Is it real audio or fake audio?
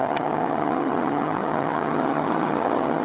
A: fake